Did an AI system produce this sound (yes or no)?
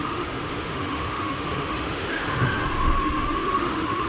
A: yes